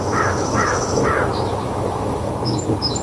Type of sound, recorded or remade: remade